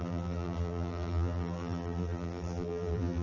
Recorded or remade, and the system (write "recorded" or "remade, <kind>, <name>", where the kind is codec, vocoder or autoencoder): remade, vocoder, BigVGAN v2